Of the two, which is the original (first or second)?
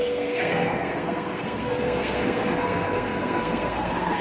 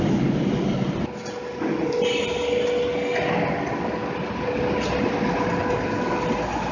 second